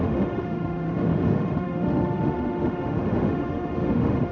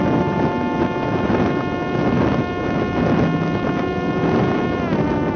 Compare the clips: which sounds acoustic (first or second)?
second